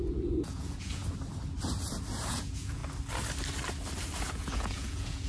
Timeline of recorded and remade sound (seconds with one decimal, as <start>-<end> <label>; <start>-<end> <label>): 0.0-1.0 remade; 1.0-2.3 recorded; 2.3-2.8 remade; 2.8-4.2 recorded; 4.2-5.3 remade

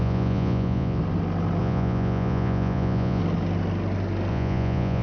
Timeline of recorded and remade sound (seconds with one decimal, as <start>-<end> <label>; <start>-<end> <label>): 0.0-1.0 remade; 1.0-1.6 recorded; 1.6-3.2 remade; 3.2-4.3 recorded; 4.3-5.0 remade

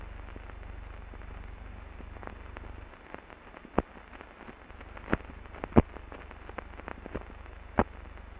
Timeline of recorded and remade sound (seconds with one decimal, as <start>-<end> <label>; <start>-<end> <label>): 0.0-8.4 recorded

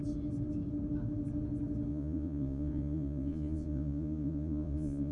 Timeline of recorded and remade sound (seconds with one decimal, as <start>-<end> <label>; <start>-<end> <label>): 0.0-1.9 recorded; 1.9-5.1 remade

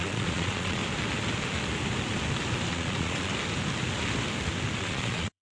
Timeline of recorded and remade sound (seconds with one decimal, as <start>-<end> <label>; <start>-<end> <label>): 0.0-0.8 remade; 0.8-2.7 recorded; 2.7-3.3 remade; 3.3-4.8 recorded; 4.8-5.5 remade

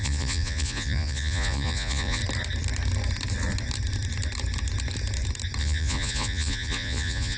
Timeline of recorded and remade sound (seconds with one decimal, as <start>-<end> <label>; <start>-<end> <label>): 0.0-2.2 remade; 2.2-5.6 recorded; 5.6-7.4 remade